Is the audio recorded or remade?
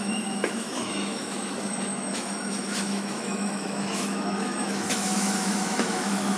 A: remade